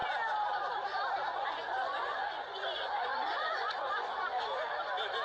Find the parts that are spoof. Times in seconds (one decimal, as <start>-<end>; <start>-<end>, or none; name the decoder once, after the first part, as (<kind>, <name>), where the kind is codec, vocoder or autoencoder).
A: 1.3-4.4 (vocoder, Vocos)